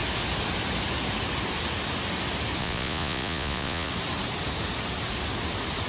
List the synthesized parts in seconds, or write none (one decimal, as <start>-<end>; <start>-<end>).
2.6-3.9